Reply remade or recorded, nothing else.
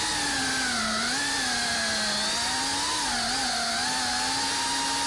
recorded